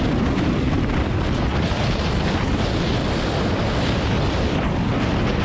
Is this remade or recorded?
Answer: recorded